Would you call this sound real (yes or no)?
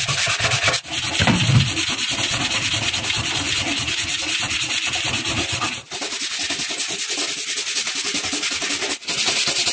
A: yes